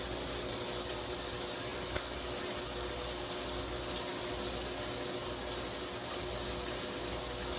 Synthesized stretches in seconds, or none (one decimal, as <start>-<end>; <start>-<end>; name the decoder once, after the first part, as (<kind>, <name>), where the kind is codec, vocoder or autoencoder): none